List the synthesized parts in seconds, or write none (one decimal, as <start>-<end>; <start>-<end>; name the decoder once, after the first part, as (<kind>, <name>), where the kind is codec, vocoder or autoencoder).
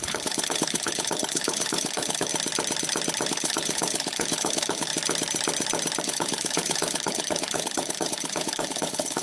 0.0-2.3 (codec, HILCodec); 3.3-4.9; 6.0-9.2